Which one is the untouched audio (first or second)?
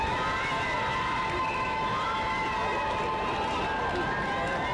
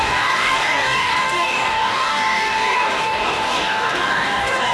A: first